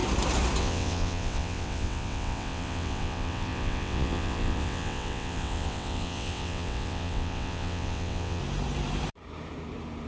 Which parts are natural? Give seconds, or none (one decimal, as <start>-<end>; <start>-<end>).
0.0-0.6; 8.4-10.1